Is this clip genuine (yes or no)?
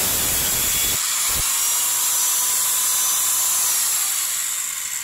yes